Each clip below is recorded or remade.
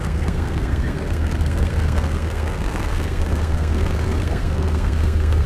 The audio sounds remade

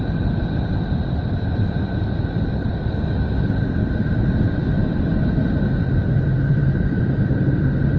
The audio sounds remade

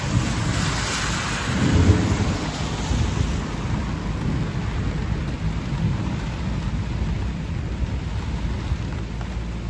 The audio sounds recorded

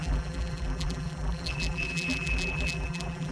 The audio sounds remade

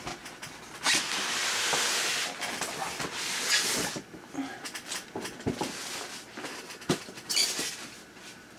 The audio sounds recorded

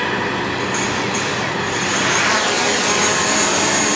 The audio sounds recorded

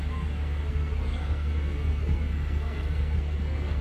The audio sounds remade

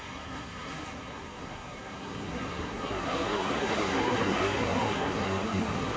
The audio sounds remade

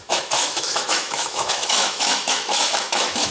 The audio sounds remade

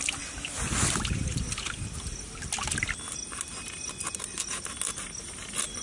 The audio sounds recorded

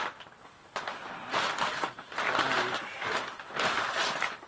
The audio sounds recorded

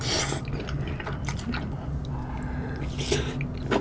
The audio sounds recorded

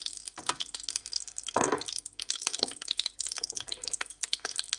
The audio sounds remade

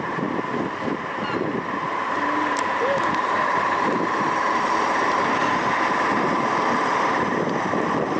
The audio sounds recorded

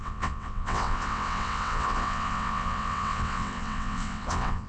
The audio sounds remade